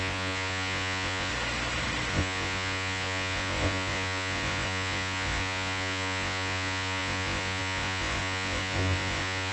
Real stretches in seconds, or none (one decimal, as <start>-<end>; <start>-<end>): 1.3-2.1